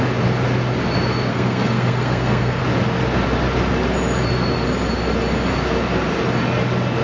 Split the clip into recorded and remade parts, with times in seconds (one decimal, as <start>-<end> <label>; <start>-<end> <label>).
0.0-1.3 recorded; 1.3-2.6 remade; 2.6-7.0 recorded